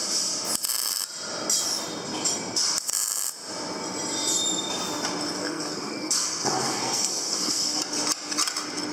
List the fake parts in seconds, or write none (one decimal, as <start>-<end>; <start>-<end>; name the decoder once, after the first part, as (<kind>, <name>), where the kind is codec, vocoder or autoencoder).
5.4-7.8 (codec, SNAC)